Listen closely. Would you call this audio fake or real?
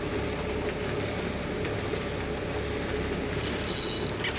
real